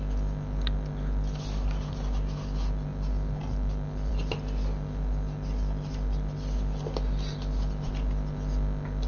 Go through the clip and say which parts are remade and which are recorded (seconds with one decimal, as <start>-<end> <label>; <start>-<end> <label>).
0.0-9.1 recorded